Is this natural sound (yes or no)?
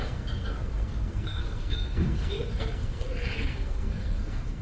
no